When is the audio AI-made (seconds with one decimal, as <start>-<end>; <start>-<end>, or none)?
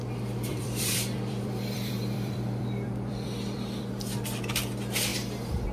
0.5-3.9